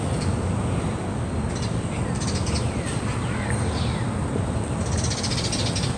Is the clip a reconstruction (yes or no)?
no